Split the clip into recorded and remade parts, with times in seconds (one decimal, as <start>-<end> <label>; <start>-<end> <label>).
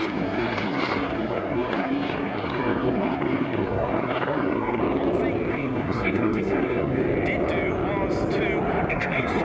0.0-4.8 remade; 4.8-5.5 recorded; 5.5-7.0 remade; 7.0-8.9 recorded; 8.9-9.4 remade